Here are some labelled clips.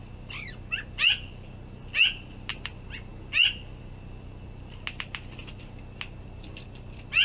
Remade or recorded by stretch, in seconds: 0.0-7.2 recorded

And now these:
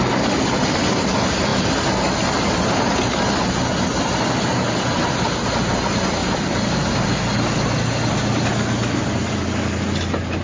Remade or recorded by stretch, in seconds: 0.0-10.4 recorded